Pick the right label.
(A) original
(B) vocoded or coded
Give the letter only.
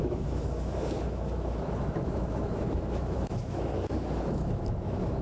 B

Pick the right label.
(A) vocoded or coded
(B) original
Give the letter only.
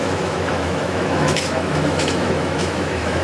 A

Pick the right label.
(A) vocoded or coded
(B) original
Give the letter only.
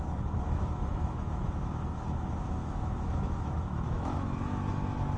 A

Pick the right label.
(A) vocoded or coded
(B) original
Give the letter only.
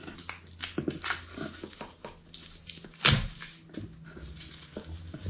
B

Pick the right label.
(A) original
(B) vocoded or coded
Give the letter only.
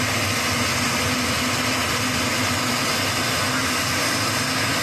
A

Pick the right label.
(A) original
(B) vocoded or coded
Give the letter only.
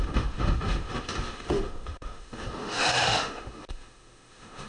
B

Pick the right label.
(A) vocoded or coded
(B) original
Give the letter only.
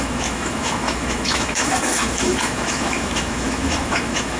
A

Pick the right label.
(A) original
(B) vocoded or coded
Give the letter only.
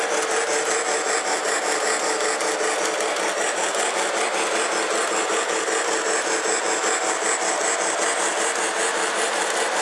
A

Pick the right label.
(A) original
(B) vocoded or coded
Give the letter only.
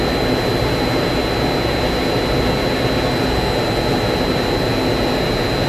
A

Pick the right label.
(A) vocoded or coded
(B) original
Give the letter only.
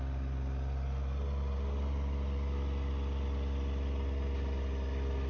B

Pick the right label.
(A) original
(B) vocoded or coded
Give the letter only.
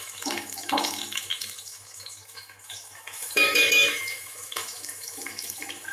B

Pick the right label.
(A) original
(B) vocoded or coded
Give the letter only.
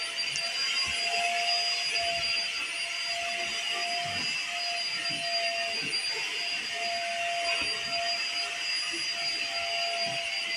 A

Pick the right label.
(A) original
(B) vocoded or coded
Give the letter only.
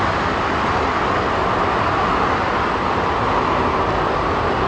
A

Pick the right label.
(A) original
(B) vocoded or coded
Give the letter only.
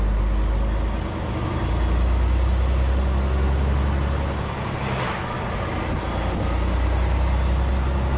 A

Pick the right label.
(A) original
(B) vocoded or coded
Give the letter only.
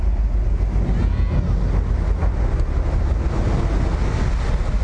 A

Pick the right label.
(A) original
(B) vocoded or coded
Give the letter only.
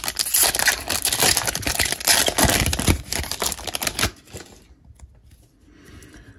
A